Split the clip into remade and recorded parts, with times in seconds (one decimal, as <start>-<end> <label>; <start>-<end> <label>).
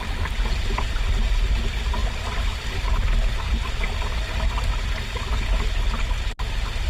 0.0-6.9 recorded